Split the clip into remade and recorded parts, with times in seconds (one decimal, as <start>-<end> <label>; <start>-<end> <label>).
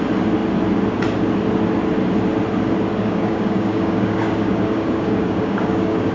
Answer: 0.0-2.9 recorded; 2.9-6.1 remade